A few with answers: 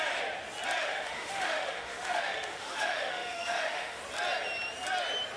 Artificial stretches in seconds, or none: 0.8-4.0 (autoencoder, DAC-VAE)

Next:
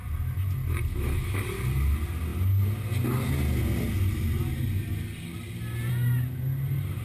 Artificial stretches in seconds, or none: 0.9-1.4 (autoencoder, DAC-VAE)

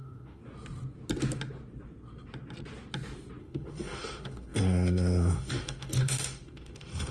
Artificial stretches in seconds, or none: 0.0-0.4 (autoencoder, DAC-VAE); 3.4-7.1